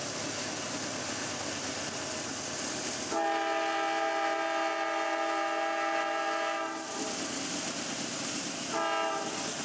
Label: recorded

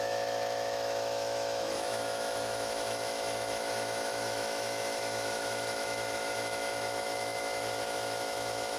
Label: remade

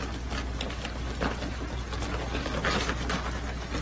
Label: recorded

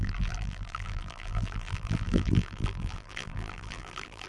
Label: remade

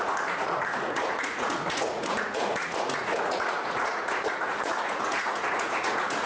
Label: remade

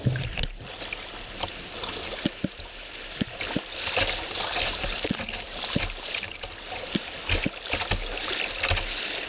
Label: recorded